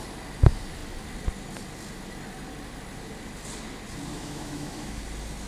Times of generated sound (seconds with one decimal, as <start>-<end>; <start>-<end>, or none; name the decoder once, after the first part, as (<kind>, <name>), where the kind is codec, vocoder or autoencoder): 4.1-5.0 (autoencoder, DAC-VAE)